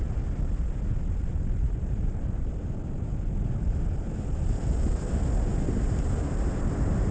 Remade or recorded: recorded